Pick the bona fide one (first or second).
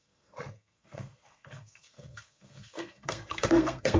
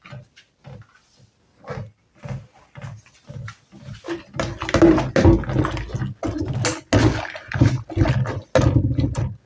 second